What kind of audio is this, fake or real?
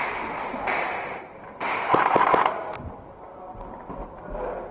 real